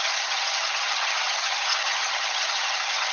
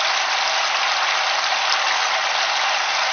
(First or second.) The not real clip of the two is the first